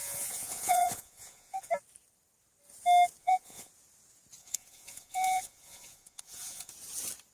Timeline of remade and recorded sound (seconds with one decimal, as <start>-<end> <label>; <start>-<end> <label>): 0.0-1.7 remade; 1.7-3.2 recorded; 3.2-3.7 remade; 3.7-4.4 recorded; 4.4-6.7 remade; 6.7-7.3 recorded